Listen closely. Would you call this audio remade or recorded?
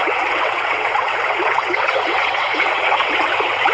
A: remade